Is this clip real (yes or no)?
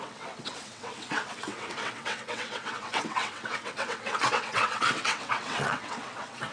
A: no